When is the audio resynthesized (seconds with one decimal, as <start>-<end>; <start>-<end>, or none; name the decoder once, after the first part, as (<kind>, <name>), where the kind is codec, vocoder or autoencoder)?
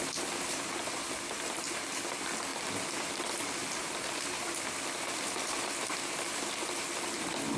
none